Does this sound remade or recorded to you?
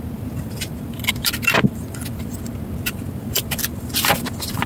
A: remade